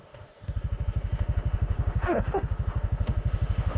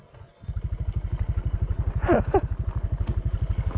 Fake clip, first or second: first